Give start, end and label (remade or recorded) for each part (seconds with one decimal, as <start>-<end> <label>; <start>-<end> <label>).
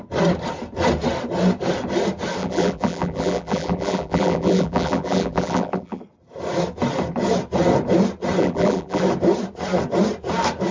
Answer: 0.0-2.4 recorded; 2.4-6.0 remade; 6.0-8.4 recorded; 8.4-9.0 remade; 9.0-10.7 recorded